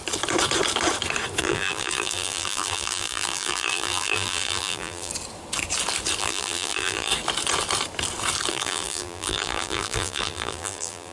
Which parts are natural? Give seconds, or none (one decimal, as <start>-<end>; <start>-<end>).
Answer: 0.0-1.4; 5.1-6.2; 7.1-8.5

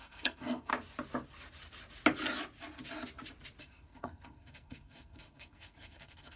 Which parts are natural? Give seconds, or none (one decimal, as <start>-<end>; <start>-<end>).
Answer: 0.7-3.6

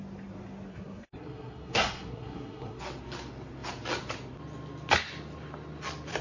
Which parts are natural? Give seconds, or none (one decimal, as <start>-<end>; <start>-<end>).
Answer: 0.0-0.7; 2.8-6.2

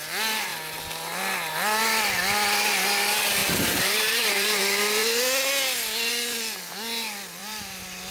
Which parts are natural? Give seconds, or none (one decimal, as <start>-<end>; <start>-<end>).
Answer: 0.0-3.4; 4.6-7.4

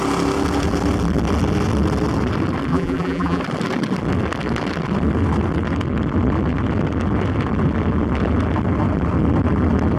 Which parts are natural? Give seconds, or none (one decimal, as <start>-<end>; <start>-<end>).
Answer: 0.0-2.7; 3.4-10.0

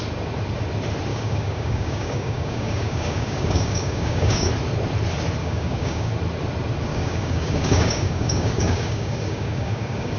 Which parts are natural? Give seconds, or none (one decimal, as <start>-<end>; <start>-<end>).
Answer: 0.0-1.1; 4.5-5.4; 6.1-6.9